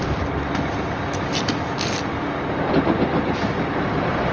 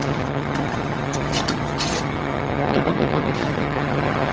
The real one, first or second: first